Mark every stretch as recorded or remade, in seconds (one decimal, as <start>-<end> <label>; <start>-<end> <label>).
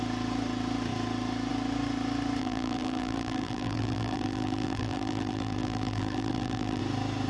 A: 0.0-2.4 recorded; 2.4-6.8 remade; 6.8-7.3 recorded